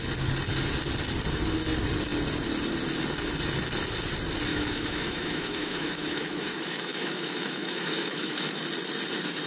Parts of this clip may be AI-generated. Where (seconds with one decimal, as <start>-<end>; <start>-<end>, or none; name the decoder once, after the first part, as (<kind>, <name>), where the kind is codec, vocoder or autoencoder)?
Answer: 4.5-8.6 (autoencoder, DAC-VAE)